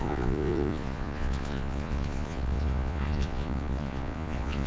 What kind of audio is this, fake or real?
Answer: fake